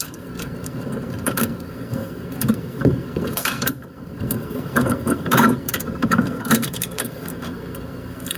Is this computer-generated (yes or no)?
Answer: yes